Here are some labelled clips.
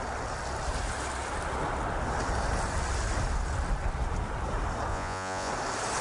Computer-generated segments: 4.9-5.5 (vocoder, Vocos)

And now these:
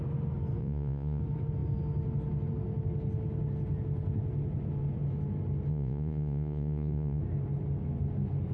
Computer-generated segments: 0.6-1.2 (vocoder, Vocos); 5.7-7.2

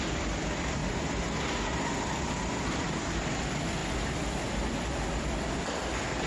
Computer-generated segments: none

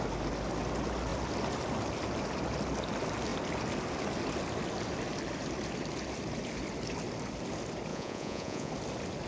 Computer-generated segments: 7.9-8.7 (vocoder, Vocos)

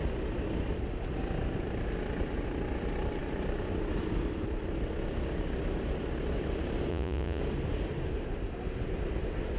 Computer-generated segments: 6.9-7.4 (vocoder, Vocos)

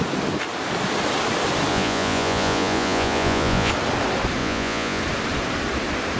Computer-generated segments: 1.7-3.7 (vocoder, Vocos); 4.4-5.0

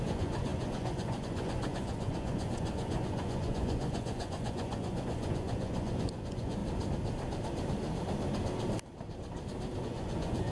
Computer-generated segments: 0.0-6.6 (vocoder, Vocos); 9.8-10.5

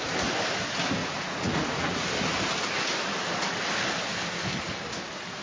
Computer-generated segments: 1.0-2.1 (vocoder, Vocos)